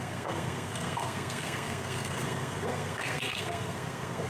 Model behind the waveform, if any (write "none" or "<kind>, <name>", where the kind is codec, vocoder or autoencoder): codec, SNAC